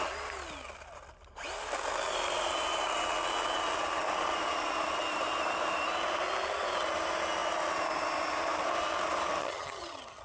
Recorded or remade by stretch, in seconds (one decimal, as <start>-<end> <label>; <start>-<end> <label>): 0.0-9.4 recorded; 9.4-10.2 remade